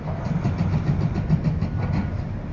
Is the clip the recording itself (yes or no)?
yes